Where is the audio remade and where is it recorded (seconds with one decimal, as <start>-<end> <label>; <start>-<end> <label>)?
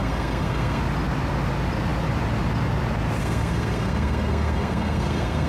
0.0-0.8 remade; 0.8-3.2 recorded; 3.2-5.5 remade